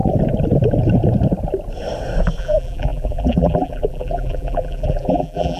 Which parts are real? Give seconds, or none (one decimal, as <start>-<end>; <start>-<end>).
0.0-2.4